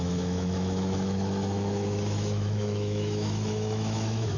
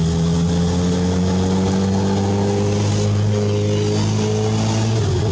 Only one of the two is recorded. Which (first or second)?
second